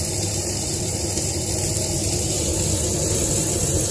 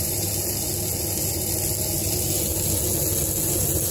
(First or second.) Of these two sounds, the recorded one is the second